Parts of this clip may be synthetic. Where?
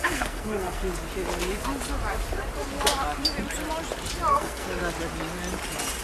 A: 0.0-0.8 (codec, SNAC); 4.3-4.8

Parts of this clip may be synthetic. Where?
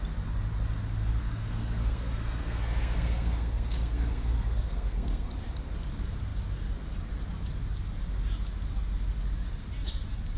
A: 1.2-5.3 (codec, SNAC)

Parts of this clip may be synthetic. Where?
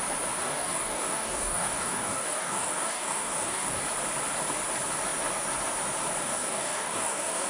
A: 0.4-3.8 (codec, DAC); 6.2-7.5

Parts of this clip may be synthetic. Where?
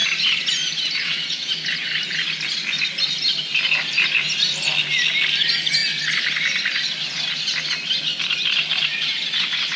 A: 1.0-1.5 (vocoder, WaveNeXt)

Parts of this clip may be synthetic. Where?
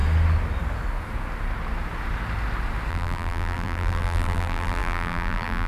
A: 2.9-5.7 (vocoder, BigVGAN v2)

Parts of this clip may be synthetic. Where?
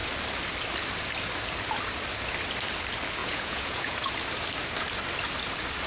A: 3.2-4.1 (vocoder, Vocos)